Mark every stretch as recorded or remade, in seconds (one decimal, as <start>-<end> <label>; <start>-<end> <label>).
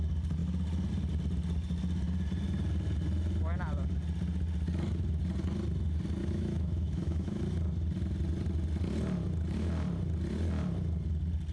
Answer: 0.0-6.2 recorded; 6.2-7.4 remade; 7.4-11.5 recorded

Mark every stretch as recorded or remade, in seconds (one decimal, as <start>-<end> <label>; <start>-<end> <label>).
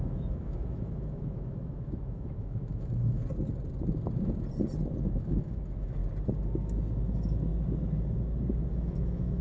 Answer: 0.0-3.2 remade; 3.2-5.0 recorded; 5.0-6.0 remade; 6.0-6.9 recorded; 6.9-7.5 remade; 7.5-8.7 recorded; 8.7-9.4 remade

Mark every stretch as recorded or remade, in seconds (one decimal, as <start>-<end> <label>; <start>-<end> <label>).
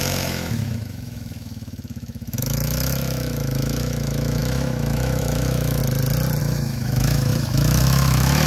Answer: 0.0-5.8 remade; 5.8-6.4 recorded; 6.4-8.5 remade